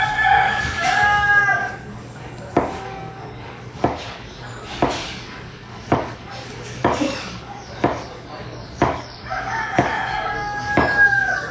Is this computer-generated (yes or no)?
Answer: yes